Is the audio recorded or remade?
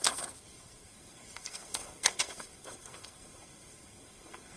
remade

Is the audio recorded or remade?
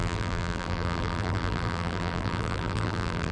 remade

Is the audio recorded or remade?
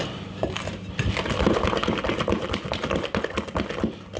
recorded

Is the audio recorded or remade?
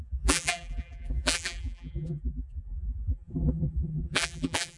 remade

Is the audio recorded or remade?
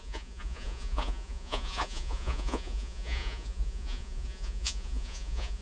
remade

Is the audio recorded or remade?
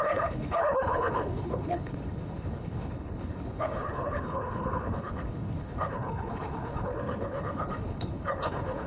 remade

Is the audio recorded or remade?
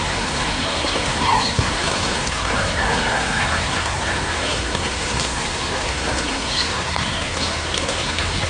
remade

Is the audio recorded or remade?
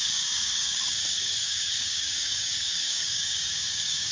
remade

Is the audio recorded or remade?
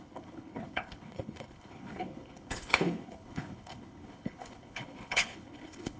remade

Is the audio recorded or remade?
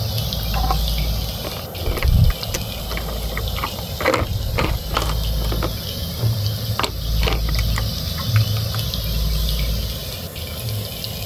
recorded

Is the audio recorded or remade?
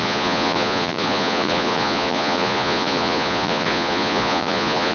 remade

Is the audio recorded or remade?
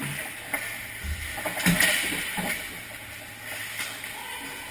recorded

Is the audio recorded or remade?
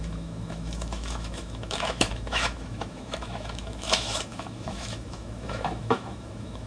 remade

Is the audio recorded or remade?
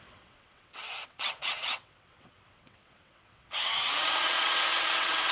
remade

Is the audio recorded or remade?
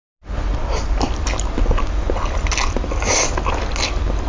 recorded